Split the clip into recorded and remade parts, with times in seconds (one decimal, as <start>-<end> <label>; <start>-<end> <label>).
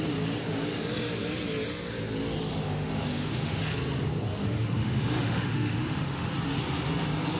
0.0-2.5 recorded; 2.5-3.6 remade; 3.6-4.4 recorded; 4.4-6.3 remade; 6.3-7.4 recorded